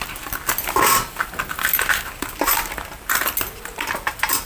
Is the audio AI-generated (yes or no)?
no